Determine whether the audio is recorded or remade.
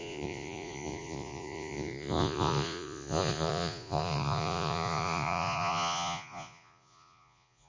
remade